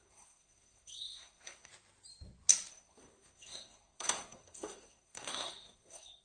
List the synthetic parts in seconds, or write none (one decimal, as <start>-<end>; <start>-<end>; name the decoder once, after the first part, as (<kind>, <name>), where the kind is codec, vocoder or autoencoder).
0.0-1.7 (codec, SNAC); 2.7-6.2